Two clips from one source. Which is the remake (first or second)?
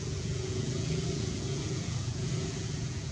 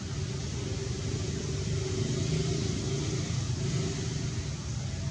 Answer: first